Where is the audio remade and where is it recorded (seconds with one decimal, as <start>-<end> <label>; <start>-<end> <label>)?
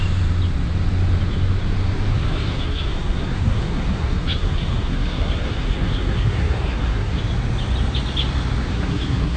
0.0-2.1 recorded; 2.1-7.2 remade; 7.2-8.7 recorded; 8.7-9.4 remade